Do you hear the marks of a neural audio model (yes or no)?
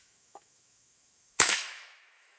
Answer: yes